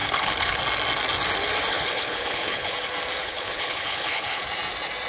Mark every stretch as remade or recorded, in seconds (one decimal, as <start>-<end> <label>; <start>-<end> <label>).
0.0-0.6 remade; 0.6-1.7 recorded; 1.7-2.7 remade; 2.7-3.2 recorded; 3.2-4.4 remade; 4.4-5.1 recorded

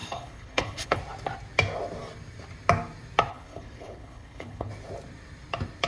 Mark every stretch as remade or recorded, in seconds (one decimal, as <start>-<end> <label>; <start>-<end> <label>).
0.0-1.0 remade; 1.0-3.3 recorded; 3.3-4.7 remade; 4.7-5.9 recorded